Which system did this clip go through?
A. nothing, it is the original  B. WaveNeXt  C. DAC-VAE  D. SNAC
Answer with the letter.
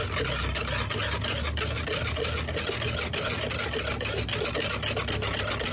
A